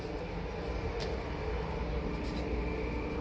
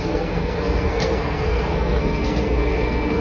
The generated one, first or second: second